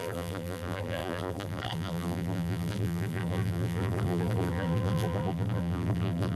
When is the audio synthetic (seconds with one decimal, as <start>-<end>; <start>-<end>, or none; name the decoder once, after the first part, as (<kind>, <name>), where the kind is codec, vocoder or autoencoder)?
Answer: 0.0-6.4 (vocoder, BigVGAN v2)